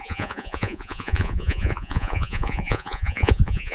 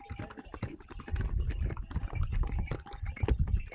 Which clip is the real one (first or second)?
second